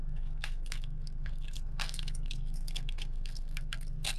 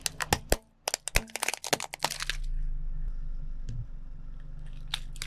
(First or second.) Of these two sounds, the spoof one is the first